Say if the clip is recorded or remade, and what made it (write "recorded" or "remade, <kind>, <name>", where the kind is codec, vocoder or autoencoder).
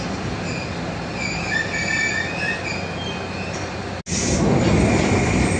recorded